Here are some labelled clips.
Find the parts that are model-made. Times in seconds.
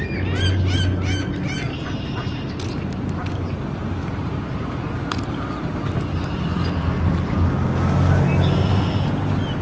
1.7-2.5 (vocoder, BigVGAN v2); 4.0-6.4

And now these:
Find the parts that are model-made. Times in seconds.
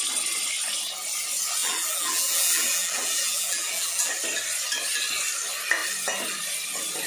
1.6-4.1 (vocoder, BigVGAN v2)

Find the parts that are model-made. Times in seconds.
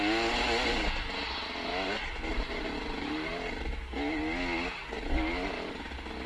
2.3-3.3 (vocoder, BigVGAN v2)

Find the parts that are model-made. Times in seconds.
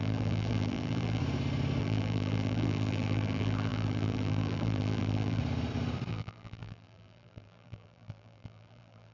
0.0-1.2 (vocoder, BigVGAN v2); 1.8-5.4; 6.1-9.1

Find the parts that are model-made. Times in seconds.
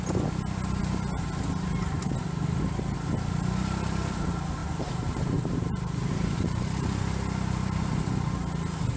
4.6-7.0 (vocoder, BigVGAN v2)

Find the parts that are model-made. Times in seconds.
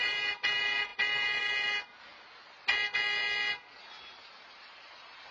0.0-2.1 (vocoder, BigVGAN v2); 3.8-5.3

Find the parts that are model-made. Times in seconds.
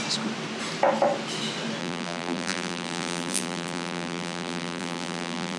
1.8-5.6 (vocoder, BigVGAN v2)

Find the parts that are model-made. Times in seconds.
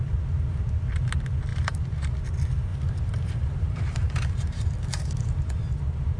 1.5-2.2 (vocoder, BigVGAN v2); 2.7-5.8